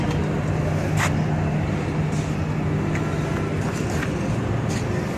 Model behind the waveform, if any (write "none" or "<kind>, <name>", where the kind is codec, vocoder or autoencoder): none